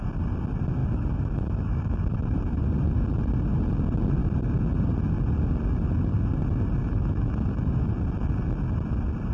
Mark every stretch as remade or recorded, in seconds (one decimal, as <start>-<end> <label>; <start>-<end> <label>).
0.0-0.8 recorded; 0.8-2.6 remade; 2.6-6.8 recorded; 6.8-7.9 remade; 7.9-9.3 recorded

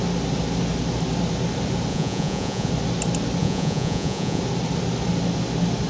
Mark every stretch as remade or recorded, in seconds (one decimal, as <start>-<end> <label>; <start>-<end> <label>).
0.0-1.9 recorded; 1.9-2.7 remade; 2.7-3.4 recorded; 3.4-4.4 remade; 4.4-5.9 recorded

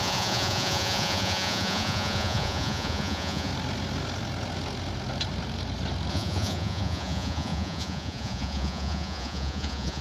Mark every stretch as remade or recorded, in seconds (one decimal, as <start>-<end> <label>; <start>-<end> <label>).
0.0-3.5 remade; 3.5-6.1 recorded; 6.1-10.0 remade

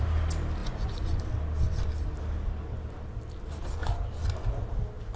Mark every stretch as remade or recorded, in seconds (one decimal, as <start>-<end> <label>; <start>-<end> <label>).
0.0-0.6 recorded; 0.6-1.2 remade; 1.2-5.2 recorded

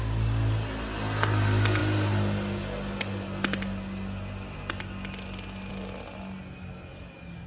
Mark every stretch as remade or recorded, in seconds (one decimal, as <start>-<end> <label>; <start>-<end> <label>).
0.0-7.5 recorded

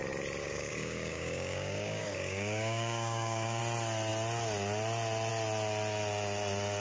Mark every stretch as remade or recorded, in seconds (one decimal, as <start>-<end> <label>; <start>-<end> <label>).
0.0-0.4 recorded; 0.4-3.6 remade; 3.6-6.8 recorded

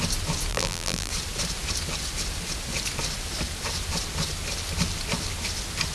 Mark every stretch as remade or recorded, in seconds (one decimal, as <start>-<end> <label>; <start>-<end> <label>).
0.0-0.5 recorded; 0.5-1.1 remade; 1.1-5.9 recorded

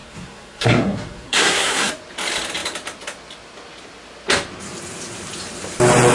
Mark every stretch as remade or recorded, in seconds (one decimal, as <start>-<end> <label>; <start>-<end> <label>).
0.0-1.9 remade; 1.9-6.1 recorded